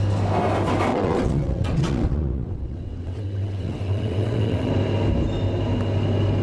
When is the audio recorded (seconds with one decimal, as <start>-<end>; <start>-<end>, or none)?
0.0-0.9; 4.7-6.4